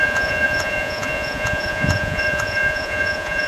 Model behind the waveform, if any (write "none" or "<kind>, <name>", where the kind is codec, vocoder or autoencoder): vocoder, Vocos